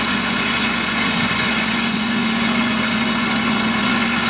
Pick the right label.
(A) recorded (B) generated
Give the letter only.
B